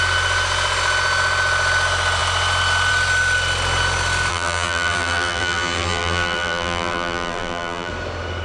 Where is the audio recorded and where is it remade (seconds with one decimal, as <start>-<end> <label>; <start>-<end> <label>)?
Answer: 0.0-4.3 recorded; 4.3-7.9 remade; 7.9-8.4 recorded